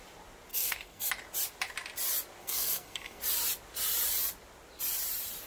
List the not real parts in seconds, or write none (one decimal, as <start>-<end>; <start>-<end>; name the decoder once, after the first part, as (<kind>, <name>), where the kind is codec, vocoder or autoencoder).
0.5-1.1 (codec, SNAC); 2.4-3.2